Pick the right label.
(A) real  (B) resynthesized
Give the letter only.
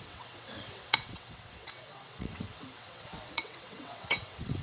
B